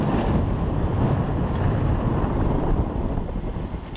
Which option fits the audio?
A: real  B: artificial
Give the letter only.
A